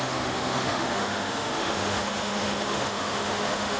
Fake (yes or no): yes